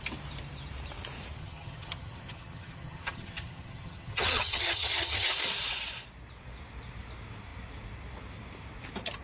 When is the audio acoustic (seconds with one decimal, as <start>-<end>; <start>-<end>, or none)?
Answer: 0.0-1.4; 5.3-9.2